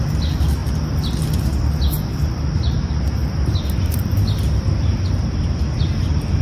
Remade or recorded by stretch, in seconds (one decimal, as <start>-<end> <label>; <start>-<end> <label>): 0.0-6.4 recorded